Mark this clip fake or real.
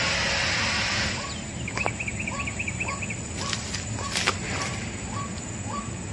real